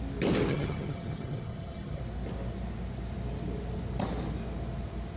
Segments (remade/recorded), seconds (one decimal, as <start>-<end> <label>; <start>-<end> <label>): 0.0-0.5 recorded; 0.5-2.0 remade; 2.0-5.2 recorded